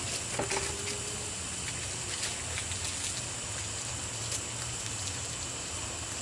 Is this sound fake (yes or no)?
no